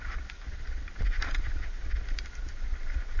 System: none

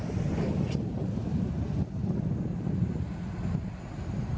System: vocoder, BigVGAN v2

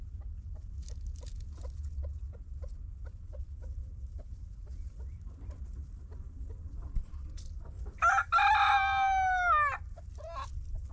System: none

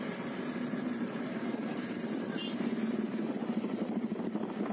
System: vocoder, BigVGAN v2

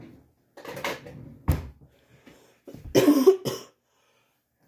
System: none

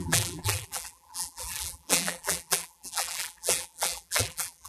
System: vocoder, BigVGAN v2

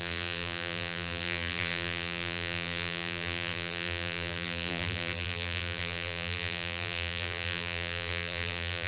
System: vocoder, BigVGAN v2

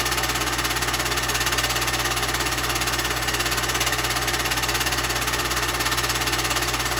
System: none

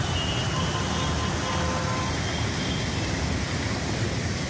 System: none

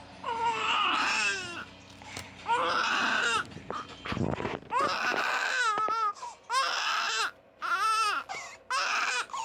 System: none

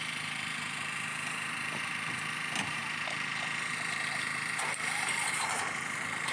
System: vocoder, BigVGAN v2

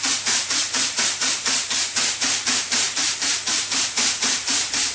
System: vocoder, BigVGAN v2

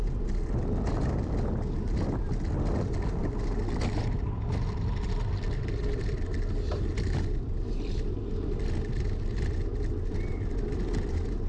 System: none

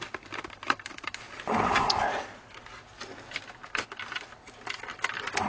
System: none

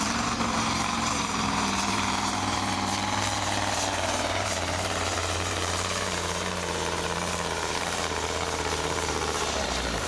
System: vocoder, BigVGAN v2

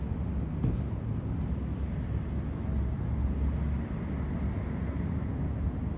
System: none